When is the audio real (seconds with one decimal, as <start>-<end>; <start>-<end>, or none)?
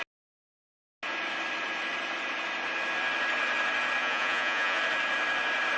0.0-4.0; 4.8-5.8